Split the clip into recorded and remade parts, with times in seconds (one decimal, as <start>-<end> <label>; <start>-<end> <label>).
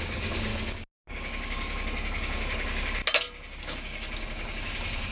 0.0-0.5 remade; 0.5-1.1 recorded; 1.1-3.0 remade; 3.0-3.6 recorded; 3.6-5.1 remade